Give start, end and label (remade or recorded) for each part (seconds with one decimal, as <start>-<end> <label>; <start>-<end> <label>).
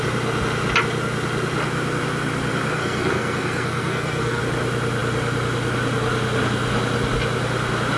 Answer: 0.0-2.7 recorded; 2.7-4.4 remade; 4.4-8.0 recorded